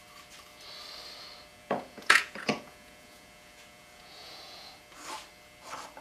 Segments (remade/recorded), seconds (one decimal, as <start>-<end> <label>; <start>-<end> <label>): 0.0-1.5 recorded; 1.5-4.7 remade; 4.7-6.0 recorded